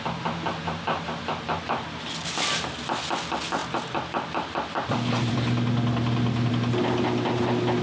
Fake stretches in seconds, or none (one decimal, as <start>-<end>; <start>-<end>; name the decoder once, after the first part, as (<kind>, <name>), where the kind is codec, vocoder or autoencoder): 3.6-6.5 (vocoder, BigVGAN v2)